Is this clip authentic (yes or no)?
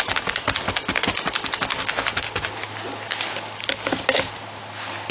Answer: yes